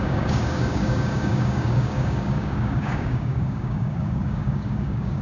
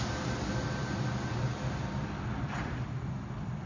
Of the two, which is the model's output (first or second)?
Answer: first